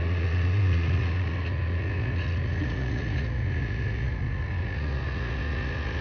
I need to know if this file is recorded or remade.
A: remade